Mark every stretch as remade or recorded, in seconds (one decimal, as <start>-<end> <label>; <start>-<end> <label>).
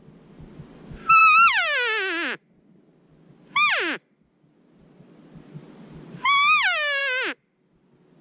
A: 0.0-8.2 recorded